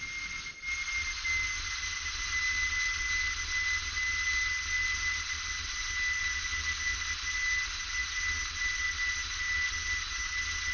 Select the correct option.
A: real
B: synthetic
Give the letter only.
A